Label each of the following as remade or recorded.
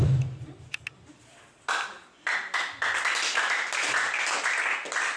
recorded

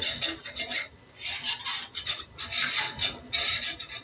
recorded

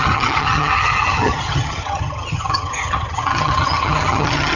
remade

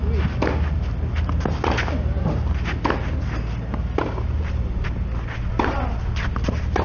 recorded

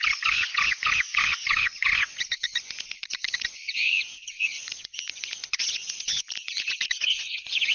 remade